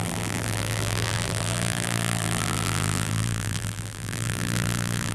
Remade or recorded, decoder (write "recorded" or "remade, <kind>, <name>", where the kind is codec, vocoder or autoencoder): remade, vocoder, BigVGAN v2